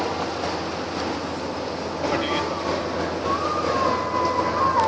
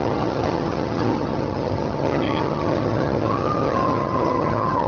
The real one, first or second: first